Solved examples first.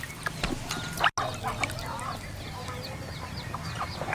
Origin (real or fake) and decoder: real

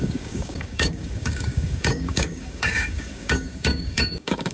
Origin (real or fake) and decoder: fake, codec, DAC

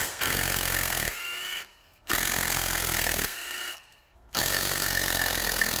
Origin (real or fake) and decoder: fake, codec, SNAC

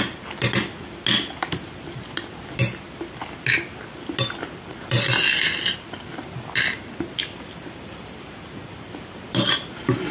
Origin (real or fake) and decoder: real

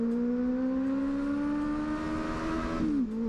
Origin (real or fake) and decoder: real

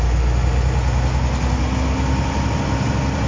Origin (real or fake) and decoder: real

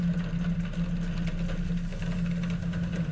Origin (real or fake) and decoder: real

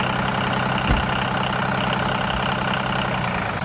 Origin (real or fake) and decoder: real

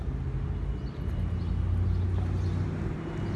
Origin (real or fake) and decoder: real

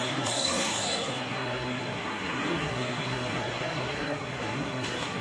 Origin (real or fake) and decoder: fake, codec, SNAC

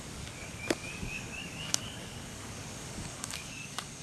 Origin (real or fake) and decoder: fake, codec, DAC